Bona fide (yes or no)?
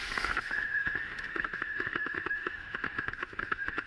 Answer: no